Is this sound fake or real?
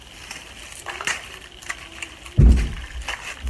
real